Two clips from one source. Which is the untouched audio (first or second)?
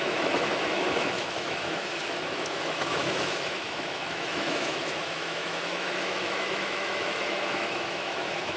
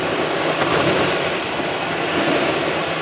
second